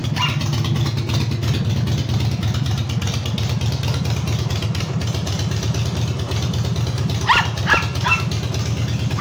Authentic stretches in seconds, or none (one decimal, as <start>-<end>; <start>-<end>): 0.0-9.2